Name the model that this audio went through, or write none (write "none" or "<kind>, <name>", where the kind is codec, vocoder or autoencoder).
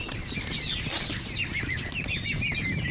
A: none